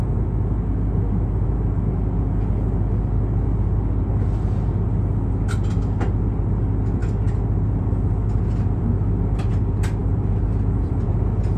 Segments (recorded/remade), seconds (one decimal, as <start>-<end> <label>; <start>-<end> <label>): 0.0-10.0 recorded; 10.0-11.1 remade; 11.1-11.6 recorded